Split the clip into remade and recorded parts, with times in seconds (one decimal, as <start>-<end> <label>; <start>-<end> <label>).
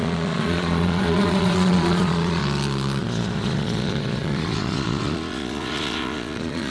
0.0-2.4 remade; 2.4-3.0 recorded; 3.0-6.7 remade